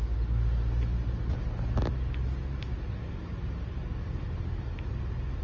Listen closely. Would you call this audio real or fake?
real